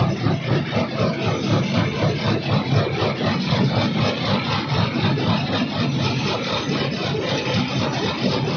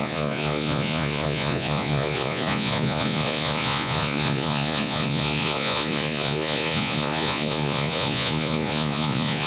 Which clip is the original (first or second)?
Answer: first